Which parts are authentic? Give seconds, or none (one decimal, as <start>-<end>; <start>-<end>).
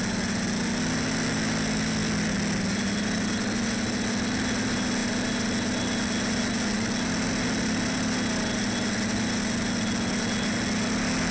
0.0-11.3